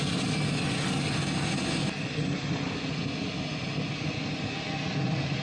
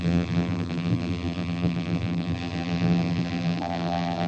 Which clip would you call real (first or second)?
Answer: first